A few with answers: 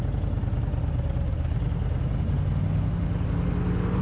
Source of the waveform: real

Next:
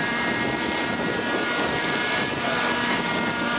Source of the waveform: fake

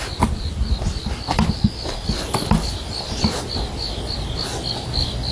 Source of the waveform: real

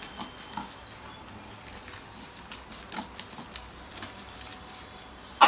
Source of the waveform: real